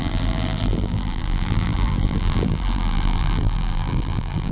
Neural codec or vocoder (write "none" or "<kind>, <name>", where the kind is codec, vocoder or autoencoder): vocoder, BigVGAN v2